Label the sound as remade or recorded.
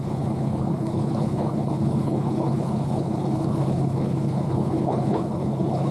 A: remade